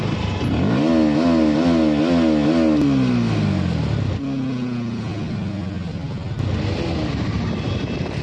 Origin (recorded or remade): recorded